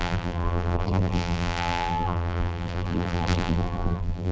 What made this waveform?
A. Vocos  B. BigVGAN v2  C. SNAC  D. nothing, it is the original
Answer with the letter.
B